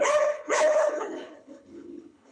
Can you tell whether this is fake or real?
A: fake